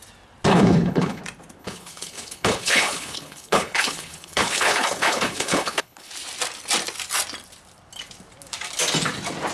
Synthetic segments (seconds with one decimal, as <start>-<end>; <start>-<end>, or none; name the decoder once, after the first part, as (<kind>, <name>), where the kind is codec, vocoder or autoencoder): 0.5-1.2 (codec, HILCodec); 1.6-6.1